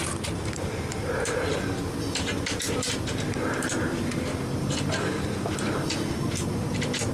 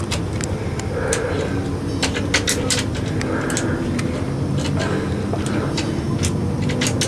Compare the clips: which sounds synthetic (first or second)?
first